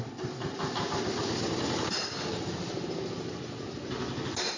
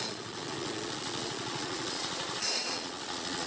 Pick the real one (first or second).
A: first